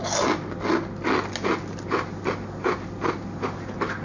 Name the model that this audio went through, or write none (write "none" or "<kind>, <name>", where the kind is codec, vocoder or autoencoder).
none